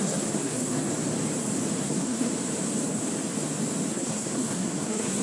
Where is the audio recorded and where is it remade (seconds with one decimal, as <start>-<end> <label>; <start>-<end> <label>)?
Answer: 0.0-0.9 remade; 0.9-1.8 recorded; 1.8-2.3 remade; 2.3-3.9 recorded; 3.9-5.2 remade